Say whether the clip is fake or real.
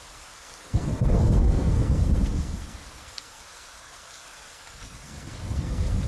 fake